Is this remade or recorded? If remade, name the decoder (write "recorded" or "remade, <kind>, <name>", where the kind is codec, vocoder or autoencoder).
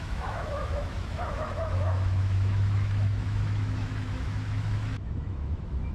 remade, autoencoder, DAC-VAE